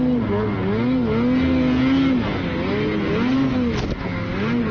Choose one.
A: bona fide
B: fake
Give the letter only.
A